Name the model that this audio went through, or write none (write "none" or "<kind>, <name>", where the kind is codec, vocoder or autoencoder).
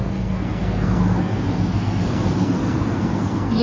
codec, SNAC